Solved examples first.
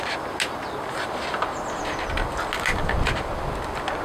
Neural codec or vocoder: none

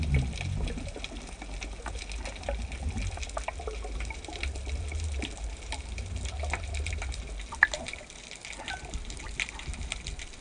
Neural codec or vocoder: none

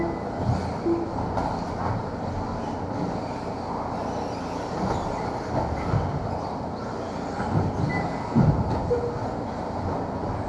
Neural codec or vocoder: none